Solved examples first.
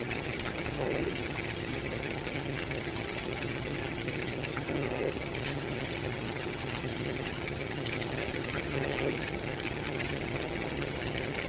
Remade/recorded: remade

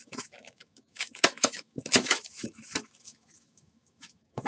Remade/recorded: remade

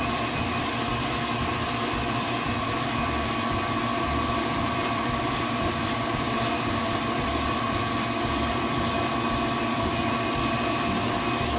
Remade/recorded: remade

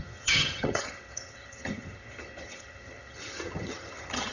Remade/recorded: remade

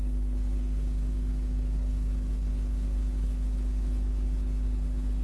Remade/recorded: remade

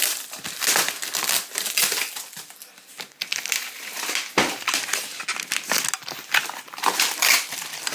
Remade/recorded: recorded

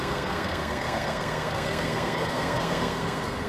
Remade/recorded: remade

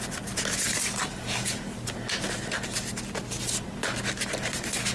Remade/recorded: recorded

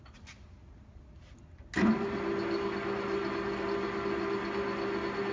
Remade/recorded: recorded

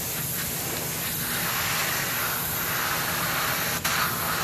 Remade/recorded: recorded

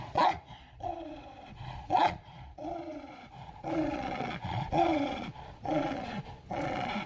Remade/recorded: remade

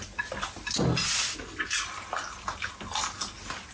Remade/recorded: recorded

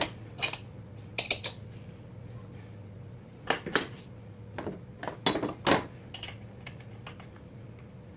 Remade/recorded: recorded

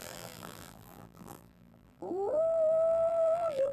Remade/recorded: remade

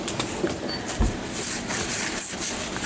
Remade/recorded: recorded